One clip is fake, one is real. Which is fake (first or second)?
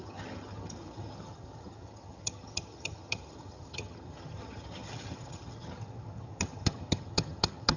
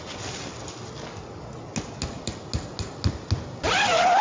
first